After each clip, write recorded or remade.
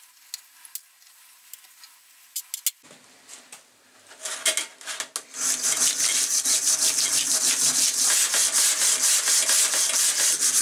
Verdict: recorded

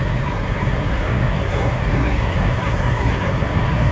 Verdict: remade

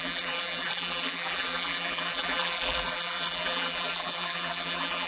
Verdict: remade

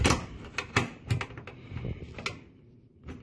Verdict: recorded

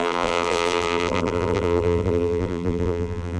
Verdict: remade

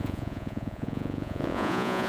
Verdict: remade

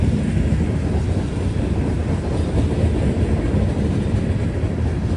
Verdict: recorded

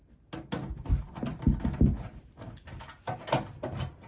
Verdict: recorded